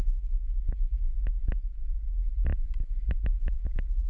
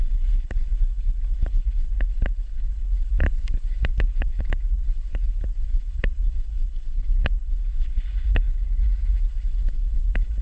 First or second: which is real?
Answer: first